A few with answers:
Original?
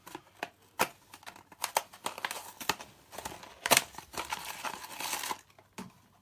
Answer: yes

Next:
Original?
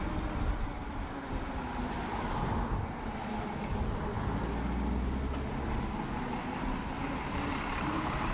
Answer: yes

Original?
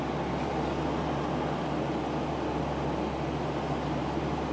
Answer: yes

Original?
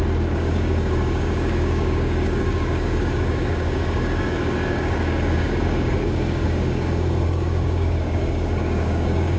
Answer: no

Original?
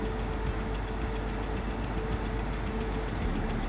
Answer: yes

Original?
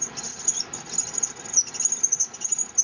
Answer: yes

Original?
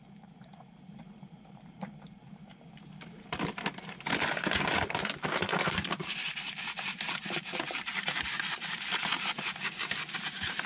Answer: no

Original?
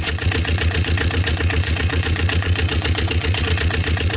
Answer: no